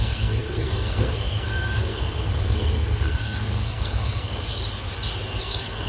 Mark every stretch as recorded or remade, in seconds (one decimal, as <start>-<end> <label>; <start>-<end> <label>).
0.0-4.6 remade; 4.6-5.4 recorded; 5.4-5.9 remade